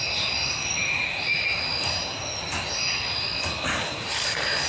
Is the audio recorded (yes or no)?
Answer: yes